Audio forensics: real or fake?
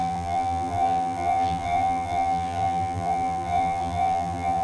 fake